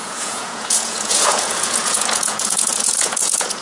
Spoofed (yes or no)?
yes